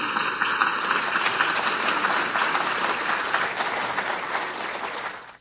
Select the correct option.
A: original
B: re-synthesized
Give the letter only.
B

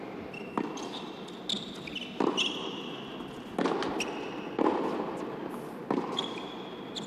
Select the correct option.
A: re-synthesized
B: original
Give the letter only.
B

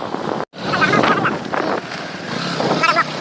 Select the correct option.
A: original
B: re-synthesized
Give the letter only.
A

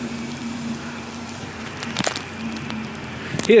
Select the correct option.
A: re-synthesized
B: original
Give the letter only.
A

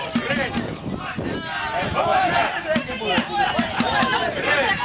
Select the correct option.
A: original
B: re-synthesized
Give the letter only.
B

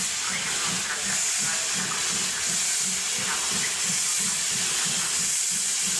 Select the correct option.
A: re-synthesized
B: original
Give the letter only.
B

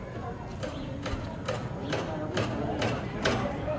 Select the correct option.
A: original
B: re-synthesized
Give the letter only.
A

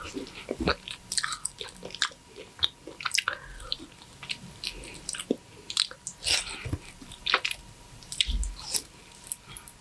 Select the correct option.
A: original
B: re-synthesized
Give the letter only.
A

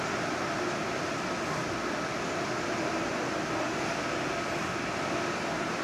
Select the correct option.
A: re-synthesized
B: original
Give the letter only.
B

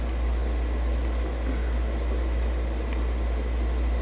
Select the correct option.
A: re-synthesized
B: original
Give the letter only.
B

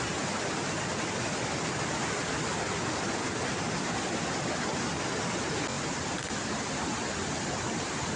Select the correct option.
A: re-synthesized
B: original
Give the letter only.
A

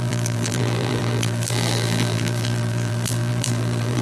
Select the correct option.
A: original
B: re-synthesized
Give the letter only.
B